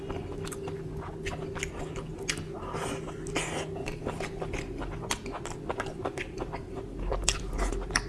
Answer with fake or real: real